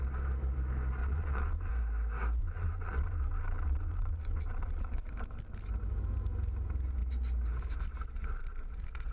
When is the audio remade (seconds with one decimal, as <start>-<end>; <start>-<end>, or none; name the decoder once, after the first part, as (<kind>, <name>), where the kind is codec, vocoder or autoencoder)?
1.0-1.7 (vocoder, Vocos); 2.4-5.1